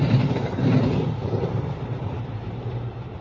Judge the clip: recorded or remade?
remade